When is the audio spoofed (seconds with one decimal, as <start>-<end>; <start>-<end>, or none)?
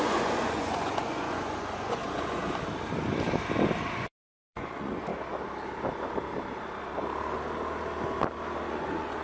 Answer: 0.0-2.4; 3.9-5.1; 8.7-9.2